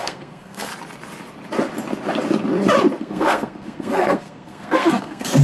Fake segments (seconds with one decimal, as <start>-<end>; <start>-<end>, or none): 0.0-0.7; 3.0-5.4